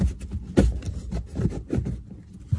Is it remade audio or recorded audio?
recorded